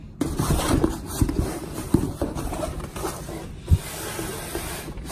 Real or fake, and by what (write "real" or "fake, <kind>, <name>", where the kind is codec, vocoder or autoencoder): real